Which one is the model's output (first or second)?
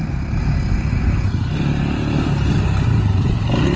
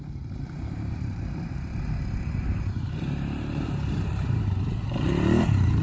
second